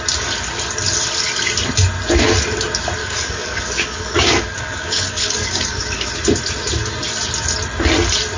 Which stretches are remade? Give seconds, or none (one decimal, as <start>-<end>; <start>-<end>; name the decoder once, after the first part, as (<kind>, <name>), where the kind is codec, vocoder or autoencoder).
3.0-6.1 (codec, DAC)